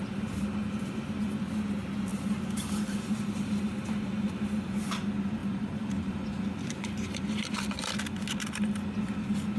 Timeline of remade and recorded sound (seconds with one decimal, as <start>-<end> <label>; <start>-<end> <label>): 0.0-2.1 recorded; 2.1-3.9 remade; 3.9-5.4 recorded; 5.4-8.0 remade; 8.0-9.6 recorded